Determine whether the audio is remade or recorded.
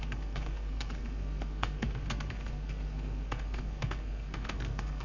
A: remade